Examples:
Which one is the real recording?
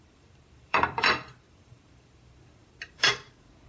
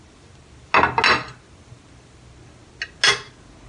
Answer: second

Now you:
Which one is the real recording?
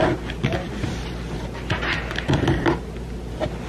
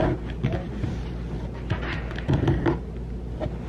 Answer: second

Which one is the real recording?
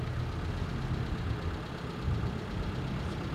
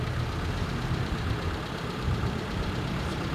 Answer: first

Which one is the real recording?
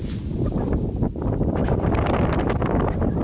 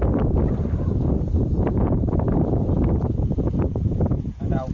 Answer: first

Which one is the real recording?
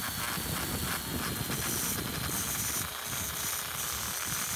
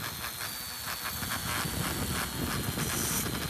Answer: second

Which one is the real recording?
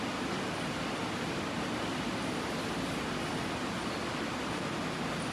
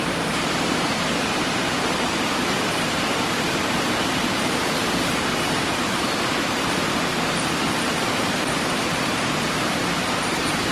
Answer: first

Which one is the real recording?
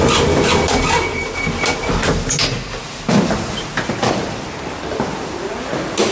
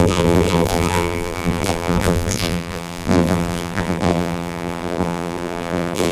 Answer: first